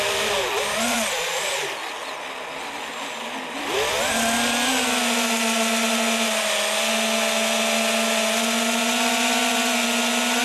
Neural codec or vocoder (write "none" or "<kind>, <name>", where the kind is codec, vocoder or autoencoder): none